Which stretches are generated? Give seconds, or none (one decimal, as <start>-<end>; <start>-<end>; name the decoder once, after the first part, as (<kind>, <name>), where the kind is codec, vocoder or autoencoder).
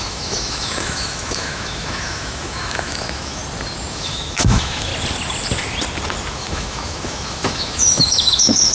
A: 0.0-3.4 (autoencoder, DAC-VAE); 3.9-4.9; 6.3-8.7